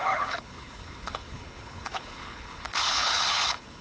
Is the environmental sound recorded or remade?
remade